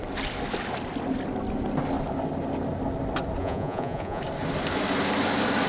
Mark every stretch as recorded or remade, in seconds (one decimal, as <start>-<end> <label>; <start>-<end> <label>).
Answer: 0.0-3.4 recorded; 3.4-4.2 remade; 4.2-5.7 recorded